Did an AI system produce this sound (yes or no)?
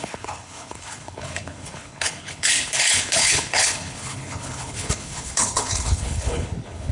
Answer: yes